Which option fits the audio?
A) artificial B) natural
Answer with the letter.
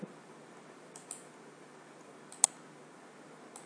B